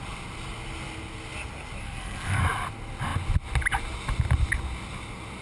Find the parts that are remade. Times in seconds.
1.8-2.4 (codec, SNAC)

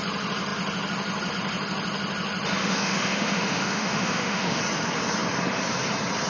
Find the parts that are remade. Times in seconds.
2.6-4.6 (autoencoder, DAC-VAE)

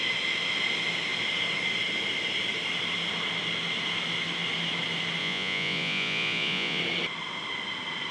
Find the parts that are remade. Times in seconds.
5.2-6.8 (vocoder, Vocos)

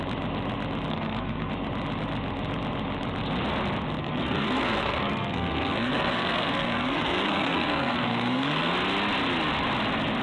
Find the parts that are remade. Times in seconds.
0.9-1.5 (codec, SNAC); 4.0-8.7

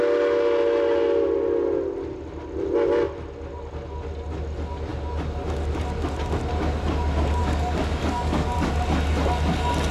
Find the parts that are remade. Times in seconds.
7.4-8.7 (codec, DAC)

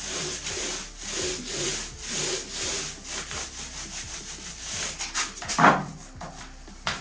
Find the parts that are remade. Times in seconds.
0.0-2.2 (vocoder, BigVGAN v2); 3.1-7.0

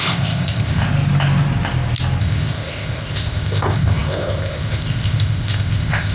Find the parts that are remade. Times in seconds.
0.0-0.8 (codec, ZipCodec); 2.2-6.1

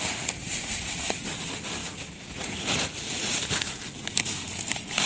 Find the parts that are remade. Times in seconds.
0.4-1.0 (vocoder, Vocos); 1.8-3.7